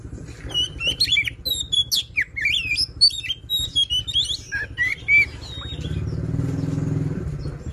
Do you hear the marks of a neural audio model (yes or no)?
no